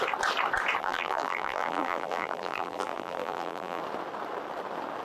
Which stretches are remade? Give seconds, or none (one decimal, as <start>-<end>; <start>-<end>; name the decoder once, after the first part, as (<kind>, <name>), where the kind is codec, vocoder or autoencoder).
0.8-3.8 (vocoder, BigVGAN v2)

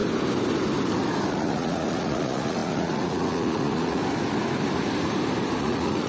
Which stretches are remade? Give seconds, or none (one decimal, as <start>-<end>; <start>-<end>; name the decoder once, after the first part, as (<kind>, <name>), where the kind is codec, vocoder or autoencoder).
1.3-4.0 (vocoder, Vocos); 5.6-6.1

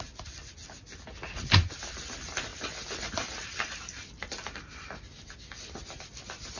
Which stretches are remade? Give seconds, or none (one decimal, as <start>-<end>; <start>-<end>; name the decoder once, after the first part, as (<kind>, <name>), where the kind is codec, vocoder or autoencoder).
none

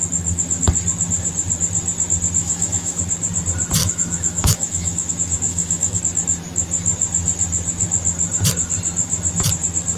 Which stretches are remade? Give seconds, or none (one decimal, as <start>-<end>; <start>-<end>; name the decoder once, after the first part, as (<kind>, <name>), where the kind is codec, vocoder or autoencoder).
2.4-3.0 (autoencoder, DAC-VAE); 3.8-5.1; 5.5-6.0